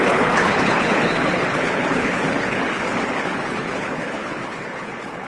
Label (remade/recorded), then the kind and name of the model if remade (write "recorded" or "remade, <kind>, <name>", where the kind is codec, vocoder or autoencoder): remade, codec, HILCodec